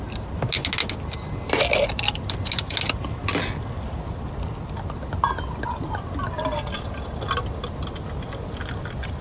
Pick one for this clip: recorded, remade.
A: recorded